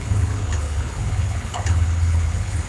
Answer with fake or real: fake